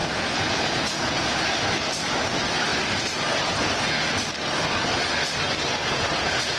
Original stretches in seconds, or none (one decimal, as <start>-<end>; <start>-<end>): 1.4-5.8